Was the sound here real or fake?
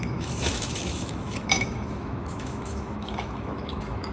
fake